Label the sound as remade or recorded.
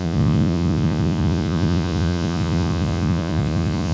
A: remade